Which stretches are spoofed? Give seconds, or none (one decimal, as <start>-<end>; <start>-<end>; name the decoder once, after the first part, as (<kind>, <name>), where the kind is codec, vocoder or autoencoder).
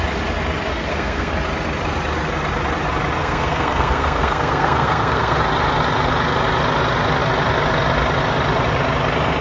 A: 0.7-1.3 (codec, SNAC); 3.2-5.4